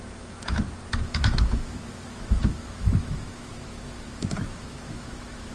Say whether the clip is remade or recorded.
remade